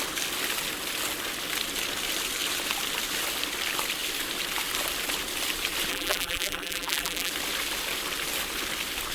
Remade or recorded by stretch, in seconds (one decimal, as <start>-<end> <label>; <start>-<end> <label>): 0.0-5.9 recorded; 5.9-7.3 remade; 7.3-9.1 recorded